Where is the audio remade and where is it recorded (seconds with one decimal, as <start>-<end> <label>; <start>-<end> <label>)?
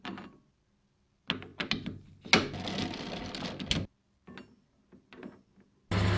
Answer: 0.0-6.2 recorded